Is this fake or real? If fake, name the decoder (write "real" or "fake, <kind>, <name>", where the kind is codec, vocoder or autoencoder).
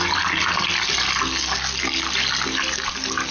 real